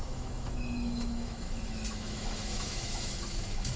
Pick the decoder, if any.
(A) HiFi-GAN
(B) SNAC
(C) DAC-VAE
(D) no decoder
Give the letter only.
C